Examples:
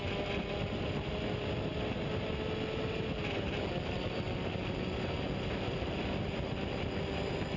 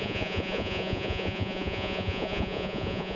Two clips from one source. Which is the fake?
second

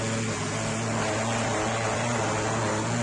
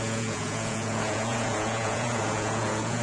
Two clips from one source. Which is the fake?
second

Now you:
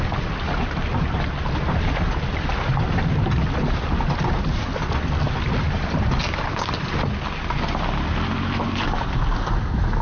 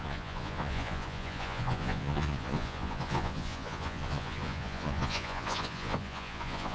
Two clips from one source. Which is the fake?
second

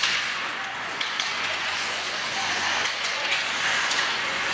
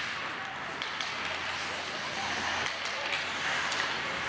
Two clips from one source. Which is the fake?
first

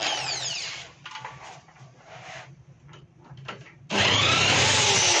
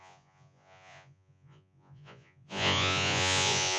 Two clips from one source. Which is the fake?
second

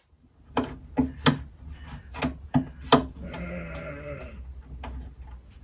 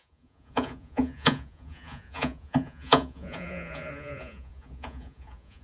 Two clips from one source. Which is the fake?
second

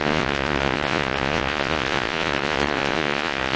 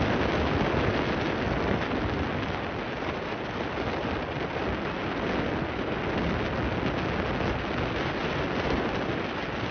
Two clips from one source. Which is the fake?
first